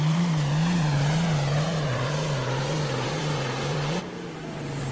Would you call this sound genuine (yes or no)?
no